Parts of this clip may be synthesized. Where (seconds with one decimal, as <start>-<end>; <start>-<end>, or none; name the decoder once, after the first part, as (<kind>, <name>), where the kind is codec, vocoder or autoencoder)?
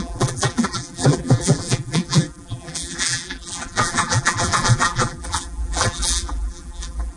0.0-7.2 (vocoder, BigVGAN v2)